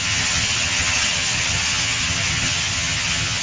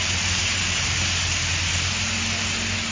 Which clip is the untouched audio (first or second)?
second